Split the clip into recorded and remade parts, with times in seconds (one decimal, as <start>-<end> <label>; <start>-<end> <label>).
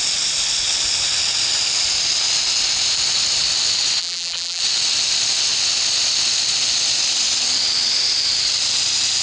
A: 0.0-4.0 recorded; 4.0-4.6 remade; 4.6-9.2 recorded